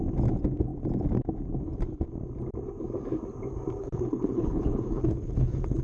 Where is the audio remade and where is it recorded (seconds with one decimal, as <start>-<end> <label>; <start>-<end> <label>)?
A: 0.0-3.8 recorded; 3.8-5.8 remade